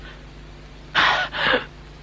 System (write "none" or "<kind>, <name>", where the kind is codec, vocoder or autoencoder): none